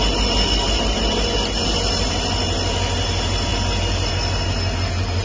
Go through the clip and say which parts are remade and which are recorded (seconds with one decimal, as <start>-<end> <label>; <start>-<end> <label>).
0.0-5.2 recorded